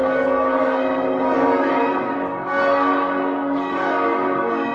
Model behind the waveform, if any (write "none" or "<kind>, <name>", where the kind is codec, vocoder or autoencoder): codec, DAC